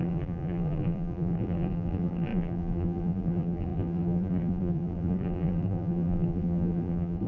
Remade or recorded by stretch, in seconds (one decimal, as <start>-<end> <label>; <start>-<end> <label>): 0.0-7.3 remade